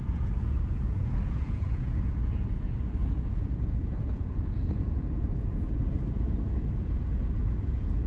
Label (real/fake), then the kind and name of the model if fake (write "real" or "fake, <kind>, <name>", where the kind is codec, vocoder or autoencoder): fake, vocoder, Vocos